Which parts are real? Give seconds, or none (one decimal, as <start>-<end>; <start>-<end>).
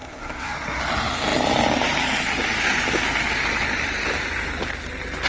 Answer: 0.8-5.3